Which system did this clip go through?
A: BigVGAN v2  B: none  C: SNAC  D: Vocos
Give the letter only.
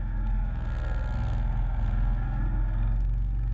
C